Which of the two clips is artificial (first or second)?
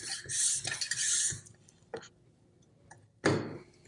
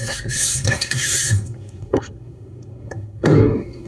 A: second